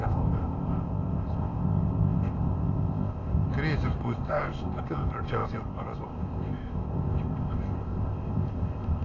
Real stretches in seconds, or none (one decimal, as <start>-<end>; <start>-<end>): 3.5-4.0